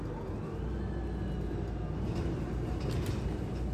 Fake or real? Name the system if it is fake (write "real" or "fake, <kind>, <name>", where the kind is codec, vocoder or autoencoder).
real